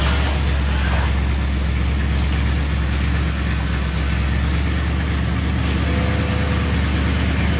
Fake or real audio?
real